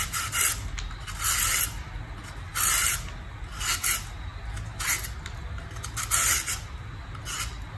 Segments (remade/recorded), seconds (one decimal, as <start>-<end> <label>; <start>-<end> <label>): 0.0-7.8 recorded